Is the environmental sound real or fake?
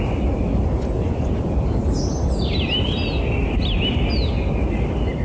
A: real